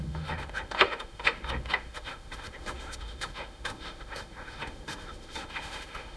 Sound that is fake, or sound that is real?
fake